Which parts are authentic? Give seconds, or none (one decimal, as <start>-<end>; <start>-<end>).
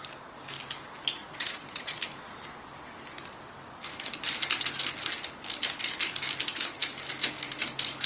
0.0-1.2; 2.0-8.1